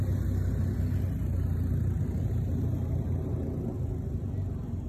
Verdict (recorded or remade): recorded